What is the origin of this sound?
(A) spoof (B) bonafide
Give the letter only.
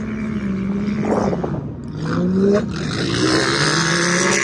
B